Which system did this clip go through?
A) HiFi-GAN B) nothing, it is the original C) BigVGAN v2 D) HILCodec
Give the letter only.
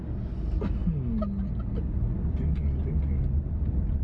B